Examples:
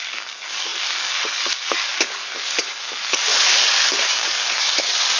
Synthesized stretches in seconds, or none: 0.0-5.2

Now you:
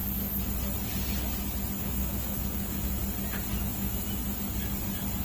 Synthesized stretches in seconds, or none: 1.8-3.0; 3.6-4.2

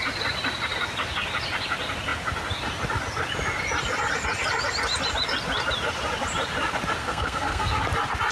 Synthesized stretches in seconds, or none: 7.0-7.8

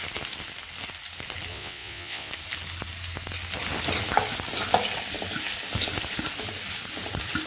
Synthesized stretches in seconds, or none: 1.5-2.3

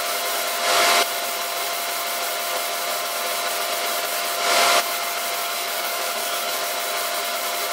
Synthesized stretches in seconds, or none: 5.4-6.6